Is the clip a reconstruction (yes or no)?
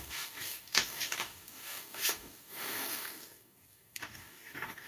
yes